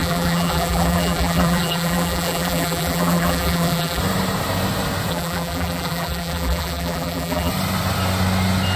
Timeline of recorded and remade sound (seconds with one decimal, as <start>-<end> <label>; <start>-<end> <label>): 0.0-4.0 remade; 4.0-5.1 recorded; 5.1-7.5 remade; 7.5-8.8 recorded